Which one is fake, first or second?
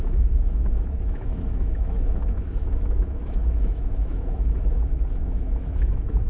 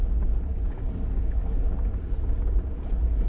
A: first